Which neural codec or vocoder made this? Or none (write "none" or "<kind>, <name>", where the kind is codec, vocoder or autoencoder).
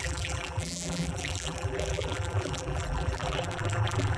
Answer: vocoder, BigVGAN v2